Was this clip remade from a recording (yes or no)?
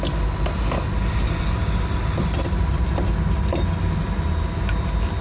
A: no